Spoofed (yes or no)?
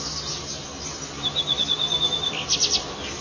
no